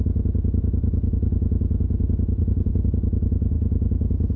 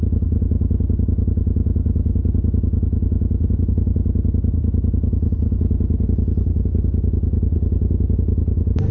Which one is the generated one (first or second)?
first